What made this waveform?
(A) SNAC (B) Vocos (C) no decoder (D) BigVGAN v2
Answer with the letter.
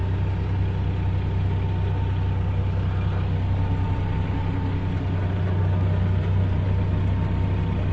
C